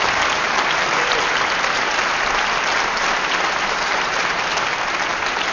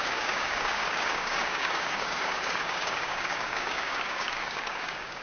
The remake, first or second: second